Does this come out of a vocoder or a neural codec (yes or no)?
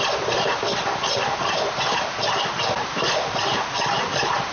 no